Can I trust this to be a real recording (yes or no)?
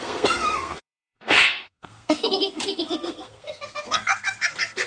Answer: no